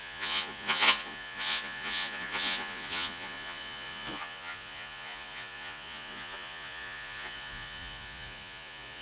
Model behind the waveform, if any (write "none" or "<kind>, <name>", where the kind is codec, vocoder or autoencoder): vocoder, Vocos